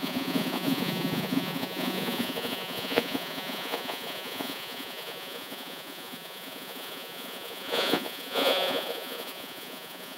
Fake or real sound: fake